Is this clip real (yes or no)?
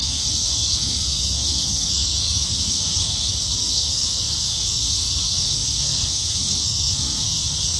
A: no